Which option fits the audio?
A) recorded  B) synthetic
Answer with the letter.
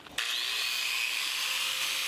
A